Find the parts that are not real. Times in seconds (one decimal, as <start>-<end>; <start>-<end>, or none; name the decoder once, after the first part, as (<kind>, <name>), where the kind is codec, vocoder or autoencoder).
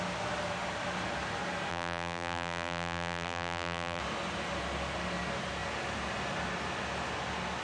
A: 1.7-4.0 (vocoder, BigVGAN v2)